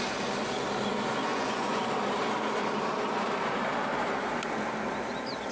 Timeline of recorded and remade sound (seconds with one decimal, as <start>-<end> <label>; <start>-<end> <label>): 0.0-1.3 recorded; 1.3-1.8 remade; 1.8-5.5 recorded